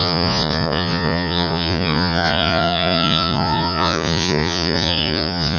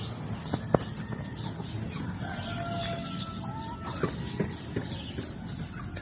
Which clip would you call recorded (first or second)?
second